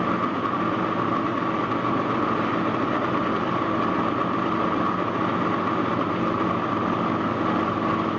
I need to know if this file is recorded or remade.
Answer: recorded